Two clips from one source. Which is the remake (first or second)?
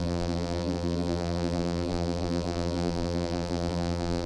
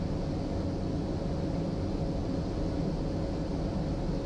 first